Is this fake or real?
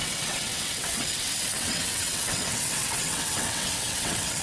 fake